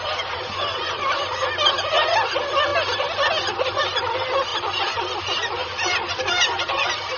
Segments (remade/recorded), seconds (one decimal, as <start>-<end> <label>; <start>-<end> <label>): 0.0-1.2 remade; 1.2-1.9 recorded; 1.9-2.7 remade; 2.7-3.8 recorded; 3.8-7.2 remade